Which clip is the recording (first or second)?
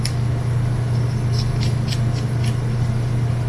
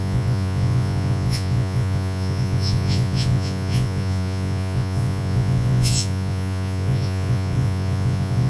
first